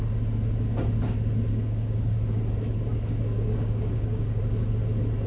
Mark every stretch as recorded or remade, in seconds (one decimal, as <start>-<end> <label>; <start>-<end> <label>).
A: 0.0-1.5 recorded; 1.5-2.4 remade; 2.4-2.9 recorded; 2.9-4.4 remade; 4.4-5.3 recorded